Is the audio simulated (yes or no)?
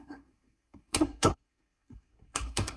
yes